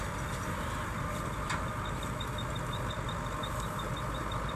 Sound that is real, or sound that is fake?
real